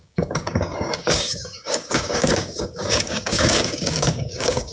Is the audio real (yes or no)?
no